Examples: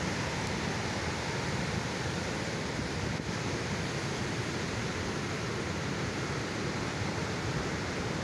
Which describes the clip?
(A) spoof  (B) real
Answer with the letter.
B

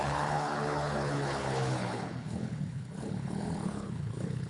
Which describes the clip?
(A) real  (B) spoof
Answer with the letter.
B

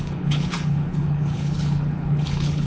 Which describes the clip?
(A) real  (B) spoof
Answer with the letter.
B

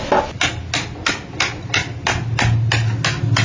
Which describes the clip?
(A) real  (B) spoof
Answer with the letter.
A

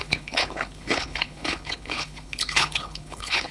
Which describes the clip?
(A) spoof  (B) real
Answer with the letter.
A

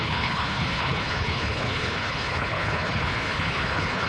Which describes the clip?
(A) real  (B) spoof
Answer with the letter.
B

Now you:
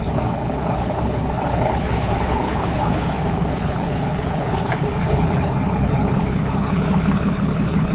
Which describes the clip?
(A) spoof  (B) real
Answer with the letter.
A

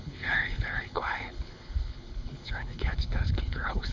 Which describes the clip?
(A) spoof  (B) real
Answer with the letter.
A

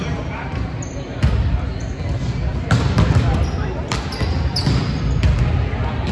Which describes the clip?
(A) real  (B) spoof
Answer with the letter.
A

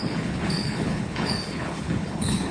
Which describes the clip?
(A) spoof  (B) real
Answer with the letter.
A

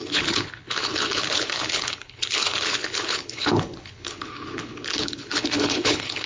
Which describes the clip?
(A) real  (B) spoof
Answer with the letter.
B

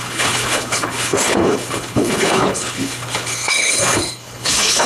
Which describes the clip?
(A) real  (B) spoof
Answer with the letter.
B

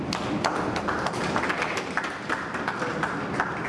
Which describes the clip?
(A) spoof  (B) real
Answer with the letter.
B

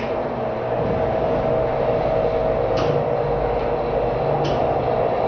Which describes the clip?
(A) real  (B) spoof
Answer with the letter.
A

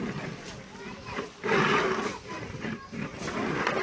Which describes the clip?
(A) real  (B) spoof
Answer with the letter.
A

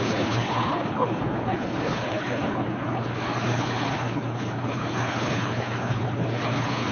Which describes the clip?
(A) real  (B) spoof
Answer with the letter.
B